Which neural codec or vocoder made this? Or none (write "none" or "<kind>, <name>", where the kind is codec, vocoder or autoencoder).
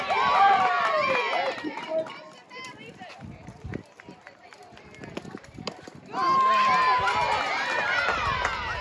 vocoder, BigVGAN v2